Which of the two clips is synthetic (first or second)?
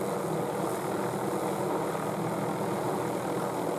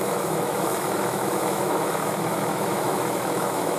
second